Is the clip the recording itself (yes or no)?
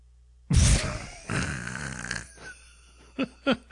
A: yes